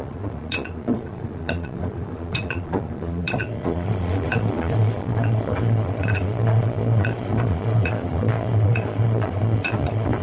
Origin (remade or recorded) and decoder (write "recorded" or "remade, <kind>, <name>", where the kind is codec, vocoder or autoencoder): remade, vocoder, Vocos